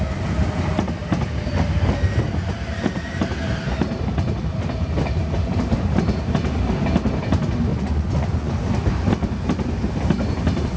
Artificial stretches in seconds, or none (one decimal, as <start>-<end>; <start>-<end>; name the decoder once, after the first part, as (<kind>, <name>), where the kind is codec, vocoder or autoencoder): 7.7-8.5 (vocoder, Vocos)